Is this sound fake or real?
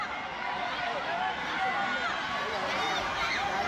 real